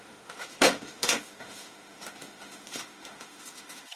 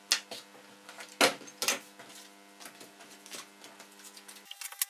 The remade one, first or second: first